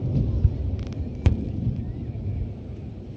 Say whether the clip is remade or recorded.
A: recorded